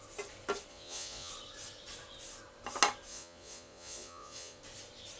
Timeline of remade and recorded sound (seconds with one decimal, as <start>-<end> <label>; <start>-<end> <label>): 0.0-0.7 recorded; 0.7-1.3 remade; 1.3-3.1 recorded; 3.1-4.6 remade; 4.6-5.2 recorded